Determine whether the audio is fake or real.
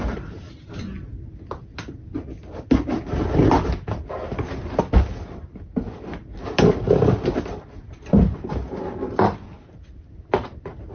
real